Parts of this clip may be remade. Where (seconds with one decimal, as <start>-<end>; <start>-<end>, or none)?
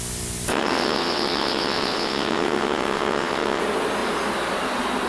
0.5-3.6